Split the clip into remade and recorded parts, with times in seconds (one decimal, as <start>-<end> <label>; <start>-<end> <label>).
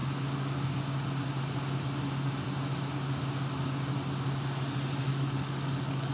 0.0-5.1 recorded; 5.1-6.1 remade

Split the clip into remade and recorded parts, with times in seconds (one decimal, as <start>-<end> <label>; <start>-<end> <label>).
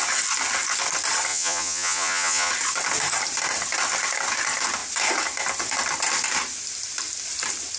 0.0-1.3 recorded; 1.3-2.5 remade; 2.5-7.8 recorded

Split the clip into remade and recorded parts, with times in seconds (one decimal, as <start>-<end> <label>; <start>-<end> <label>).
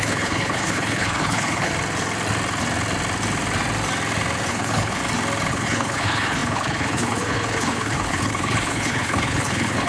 0.0-1.7 remade; 1.7-4.5 recorded; 4.5-5.0 remade; 5.0-5.5 recorded; 5.5-9.9 remade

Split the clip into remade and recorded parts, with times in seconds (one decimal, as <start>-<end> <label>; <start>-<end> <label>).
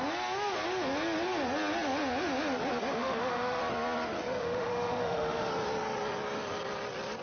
0.0-3.0 recorded; 3.0-3.6 remade; 3.6-4.4 recorded; 4.4-5.5 remade; 5.5-7.2 recorded